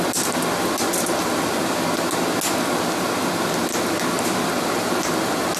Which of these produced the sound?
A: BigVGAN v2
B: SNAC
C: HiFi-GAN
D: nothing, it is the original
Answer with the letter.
D